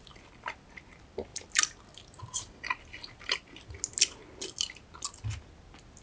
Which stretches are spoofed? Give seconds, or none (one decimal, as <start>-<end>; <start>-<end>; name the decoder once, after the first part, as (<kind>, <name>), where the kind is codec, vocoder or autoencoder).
none